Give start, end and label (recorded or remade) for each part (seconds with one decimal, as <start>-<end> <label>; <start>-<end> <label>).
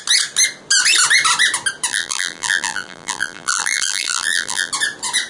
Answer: 0.0-1.9 recorded; 1.9-4.7 remade; 4.7-5.3 recorded